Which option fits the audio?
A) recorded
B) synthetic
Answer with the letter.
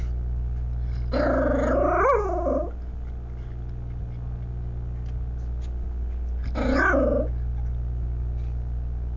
A